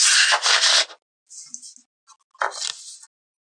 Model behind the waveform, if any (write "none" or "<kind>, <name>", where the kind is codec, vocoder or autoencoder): none